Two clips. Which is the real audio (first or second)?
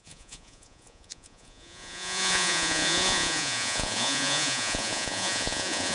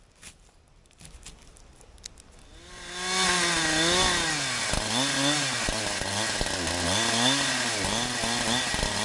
second